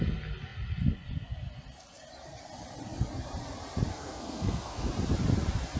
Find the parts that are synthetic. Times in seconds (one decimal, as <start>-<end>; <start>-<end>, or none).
3.9-4.9